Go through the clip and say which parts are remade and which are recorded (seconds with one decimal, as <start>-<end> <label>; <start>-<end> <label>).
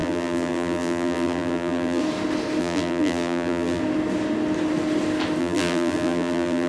0.0-2.0 remade; 2.0-2.6 recorded; 2.6-3.8 remade; 3.8-5.4 recorded; 5.4-6.7 remade